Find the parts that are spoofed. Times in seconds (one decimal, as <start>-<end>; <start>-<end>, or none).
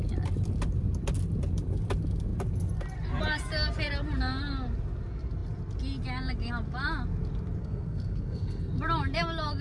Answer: 7.6-8.7